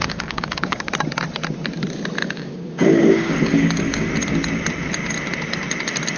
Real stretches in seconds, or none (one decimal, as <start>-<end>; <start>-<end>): 0.9-2.2; 4.1-6.2